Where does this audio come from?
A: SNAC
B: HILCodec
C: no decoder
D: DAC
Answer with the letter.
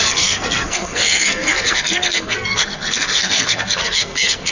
A